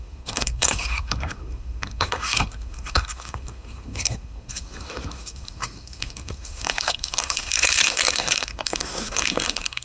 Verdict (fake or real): fake